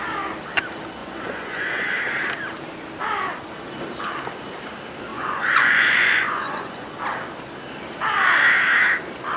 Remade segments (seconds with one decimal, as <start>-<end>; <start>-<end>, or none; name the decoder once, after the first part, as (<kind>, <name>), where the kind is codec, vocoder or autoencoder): 1.0-2.0 (vocoder, Vocos); 5.1-7.0